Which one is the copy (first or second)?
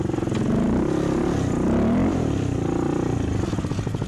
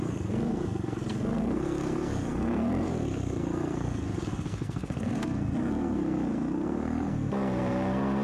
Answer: second